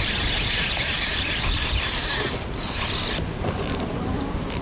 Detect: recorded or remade remade